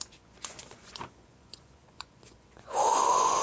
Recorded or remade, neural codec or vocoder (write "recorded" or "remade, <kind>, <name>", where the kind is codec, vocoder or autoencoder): remade, vocoder, Vocos